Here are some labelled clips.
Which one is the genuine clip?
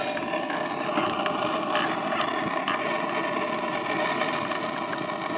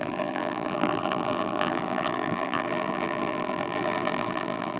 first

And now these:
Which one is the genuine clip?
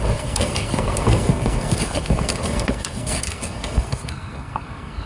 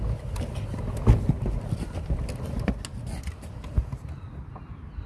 second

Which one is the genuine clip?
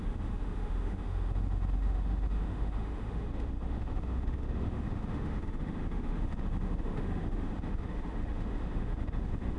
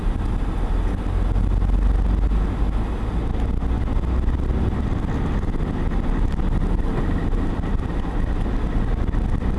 second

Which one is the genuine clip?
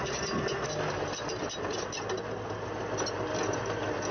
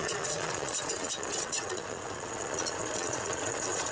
first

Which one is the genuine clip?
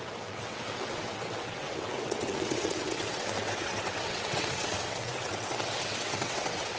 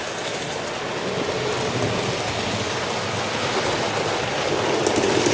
second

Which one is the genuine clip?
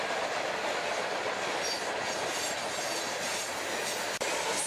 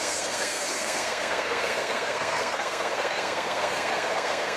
first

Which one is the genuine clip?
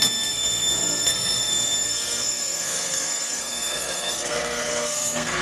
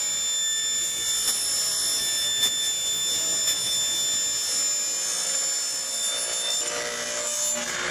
second